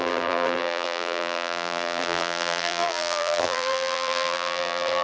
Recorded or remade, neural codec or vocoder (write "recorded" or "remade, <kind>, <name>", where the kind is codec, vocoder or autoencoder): remade, vocoder, BigVGAN v2